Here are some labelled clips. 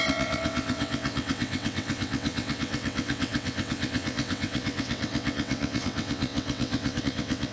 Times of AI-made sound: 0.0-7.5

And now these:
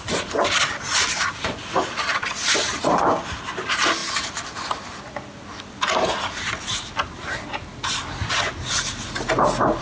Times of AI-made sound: none

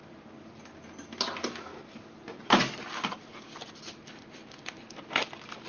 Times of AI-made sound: none